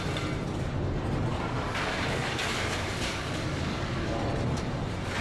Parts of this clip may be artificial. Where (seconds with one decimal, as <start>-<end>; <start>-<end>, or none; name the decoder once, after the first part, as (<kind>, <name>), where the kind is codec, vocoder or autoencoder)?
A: 1.3-4.2 (codec, DAC)